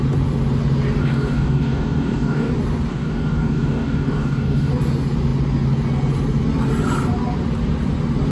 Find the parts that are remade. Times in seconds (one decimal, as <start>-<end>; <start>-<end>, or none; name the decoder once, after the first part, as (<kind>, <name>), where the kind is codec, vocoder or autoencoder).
1.0-2.5 (codec, DAC); 2.9-4.7